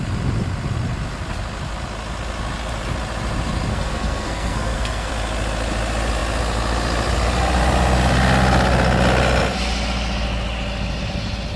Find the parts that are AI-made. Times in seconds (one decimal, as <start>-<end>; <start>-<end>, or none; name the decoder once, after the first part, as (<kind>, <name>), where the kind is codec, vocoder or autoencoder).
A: 3.7-5.1 (codec, SNAC)